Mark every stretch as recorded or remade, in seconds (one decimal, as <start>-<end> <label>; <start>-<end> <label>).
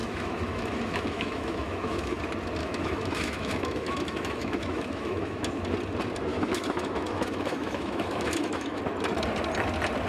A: 0.0-2.2 remade; 2.2-2.6 recorded; 2.6-5.4 remade; 5.4-6.3 recorded; 6.3-8.8 remade; 8.8-10.1 recorded